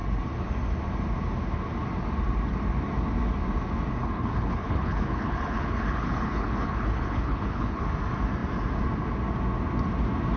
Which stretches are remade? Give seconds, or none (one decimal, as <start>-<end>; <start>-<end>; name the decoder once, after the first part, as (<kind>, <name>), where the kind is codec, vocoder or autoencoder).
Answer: 4.0-7.8 (codec, HILCodec)